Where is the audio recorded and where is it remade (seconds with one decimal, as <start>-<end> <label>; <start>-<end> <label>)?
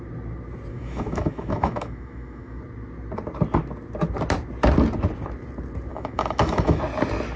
0.0-0.7 recorded; 0.7-2.6 remade; 2.6-5.9 recorded; 5.9-6.8 remade; 6.8-7.4 recorded